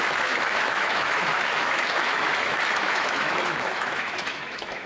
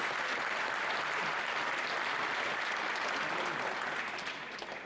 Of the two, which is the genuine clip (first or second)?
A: second